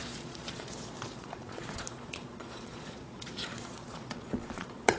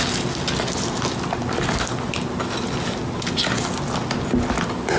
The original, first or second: second